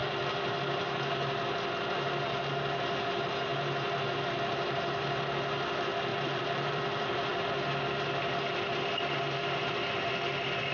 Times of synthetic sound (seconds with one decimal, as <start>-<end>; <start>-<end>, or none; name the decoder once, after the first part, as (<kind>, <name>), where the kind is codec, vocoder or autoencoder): 6.1-7.5 (vocoder, BigVGAN v2)

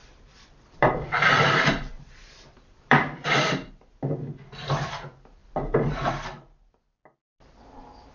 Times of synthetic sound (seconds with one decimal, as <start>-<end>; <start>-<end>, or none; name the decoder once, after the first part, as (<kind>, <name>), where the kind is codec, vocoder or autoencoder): 0.0-3.7 (vocoder, BigVGAN v2); 5.4-6.1

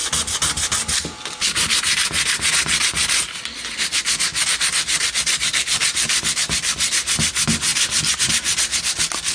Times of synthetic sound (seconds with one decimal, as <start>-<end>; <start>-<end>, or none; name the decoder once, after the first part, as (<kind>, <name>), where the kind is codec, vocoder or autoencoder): 4.3-6.2 (vocoder, BigVGAN v2); 7.7-8.2